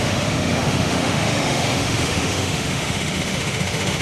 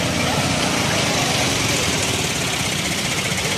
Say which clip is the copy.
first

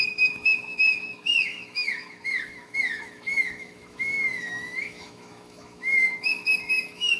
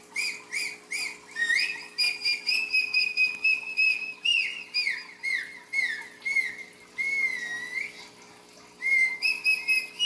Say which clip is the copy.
first